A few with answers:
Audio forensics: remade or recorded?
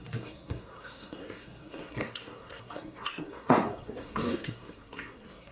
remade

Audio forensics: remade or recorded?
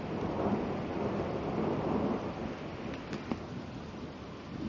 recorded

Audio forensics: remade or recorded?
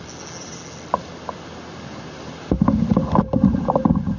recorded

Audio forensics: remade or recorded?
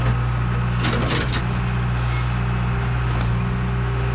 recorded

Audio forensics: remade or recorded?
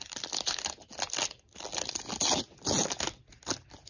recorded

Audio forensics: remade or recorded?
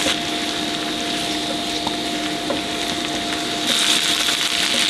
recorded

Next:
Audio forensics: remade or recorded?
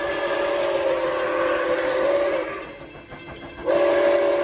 recorded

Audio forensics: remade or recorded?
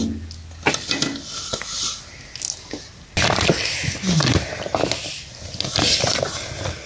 recorded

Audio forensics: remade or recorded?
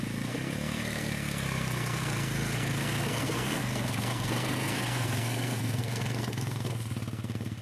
remade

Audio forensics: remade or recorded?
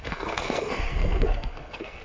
remade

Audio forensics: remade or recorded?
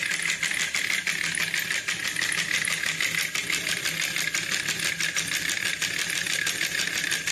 recorded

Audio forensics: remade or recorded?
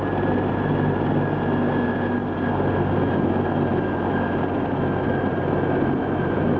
recorded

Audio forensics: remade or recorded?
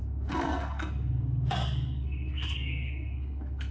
remade